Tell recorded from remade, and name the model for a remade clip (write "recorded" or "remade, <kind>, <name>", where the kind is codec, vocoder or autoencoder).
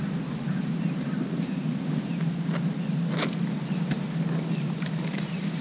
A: recorded